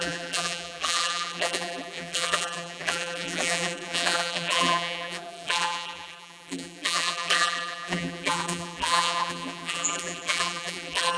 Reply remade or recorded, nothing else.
remade